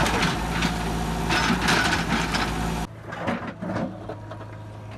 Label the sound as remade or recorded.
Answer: recorded